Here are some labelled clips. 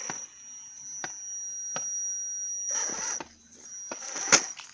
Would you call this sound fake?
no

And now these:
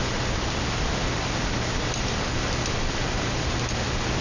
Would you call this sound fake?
no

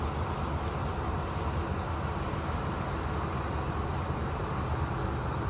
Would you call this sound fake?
no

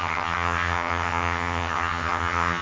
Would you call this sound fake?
yes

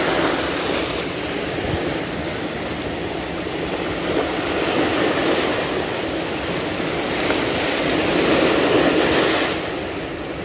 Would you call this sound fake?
no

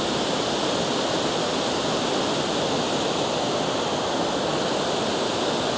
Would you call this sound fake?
no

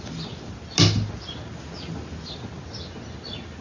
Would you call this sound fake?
no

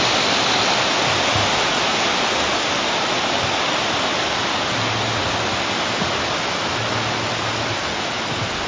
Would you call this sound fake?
no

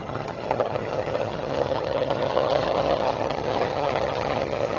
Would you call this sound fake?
yes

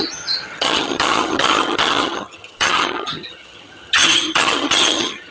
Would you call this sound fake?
yes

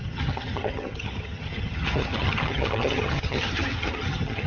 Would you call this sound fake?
yes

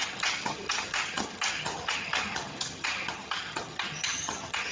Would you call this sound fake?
yes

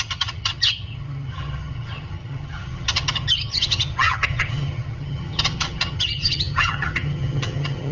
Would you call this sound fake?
yes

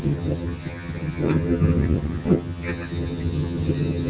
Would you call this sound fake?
yes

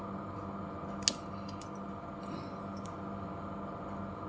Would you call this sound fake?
no